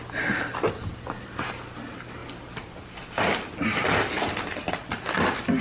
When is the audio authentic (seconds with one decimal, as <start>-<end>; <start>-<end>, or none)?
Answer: 0.0-5.6